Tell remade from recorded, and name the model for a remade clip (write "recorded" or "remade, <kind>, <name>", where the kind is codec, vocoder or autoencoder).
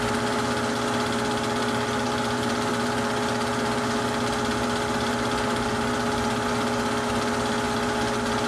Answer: recorded